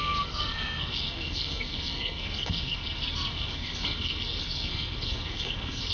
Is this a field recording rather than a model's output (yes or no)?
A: no